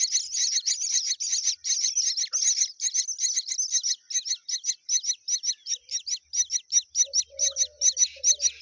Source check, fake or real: real